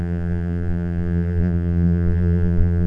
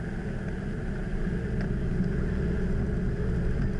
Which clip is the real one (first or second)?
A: second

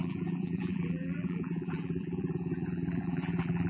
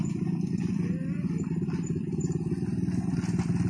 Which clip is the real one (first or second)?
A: second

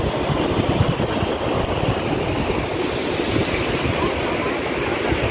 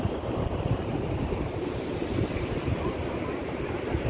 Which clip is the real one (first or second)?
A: first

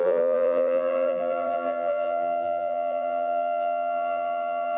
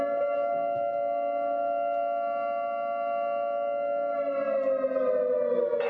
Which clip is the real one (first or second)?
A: second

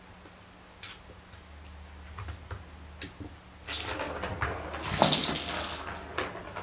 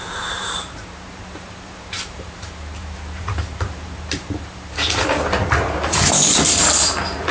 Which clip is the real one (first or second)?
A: first